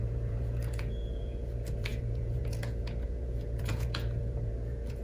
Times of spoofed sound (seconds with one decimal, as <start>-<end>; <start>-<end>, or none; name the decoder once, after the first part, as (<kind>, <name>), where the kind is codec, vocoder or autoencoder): 0.0-5.0 (vocoder, Vocos)